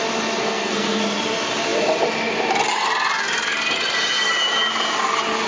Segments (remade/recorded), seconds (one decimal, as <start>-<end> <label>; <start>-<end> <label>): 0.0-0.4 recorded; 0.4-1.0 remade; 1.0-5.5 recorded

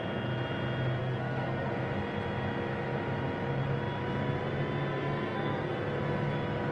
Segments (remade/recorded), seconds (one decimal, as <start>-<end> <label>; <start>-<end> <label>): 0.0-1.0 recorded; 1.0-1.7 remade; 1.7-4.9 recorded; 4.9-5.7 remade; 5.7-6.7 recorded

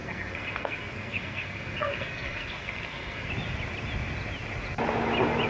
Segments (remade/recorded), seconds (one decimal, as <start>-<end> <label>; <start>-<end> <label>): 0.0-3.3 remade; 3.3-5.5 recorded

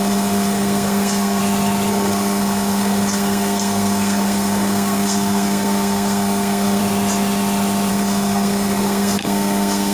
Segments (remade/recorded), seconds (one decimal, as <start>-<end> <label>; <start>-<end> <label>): 0.0-1.4 remade; 1.4-1.9 recorded; 1.9-6.8 remade; 6.8-7.9 recorded; 7.9-9.9 remade

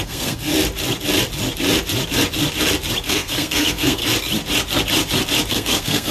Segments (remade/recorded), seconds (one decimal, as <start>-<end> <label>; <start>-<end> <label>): 0.0-0.5 remade; 0.5-3.1 recorded; 3.1-4.0 remade; 4.0-5.5 recorded; 5.5-6.1 remade

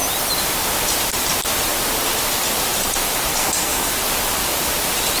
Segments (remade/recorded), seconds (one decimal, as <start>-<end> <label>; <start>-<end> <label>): 0.0-3.3 recorded; 3.3-3.9 remade; 3.9-5.2 recorded

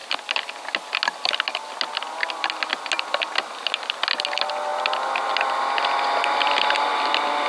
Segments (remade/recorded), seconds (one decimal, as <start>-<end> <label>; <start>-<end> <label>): 0.0-7.5 recorded

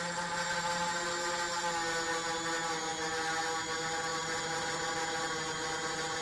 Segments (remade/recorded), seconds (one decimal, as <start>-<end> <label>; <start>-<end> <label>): 0.0-6.2 recorded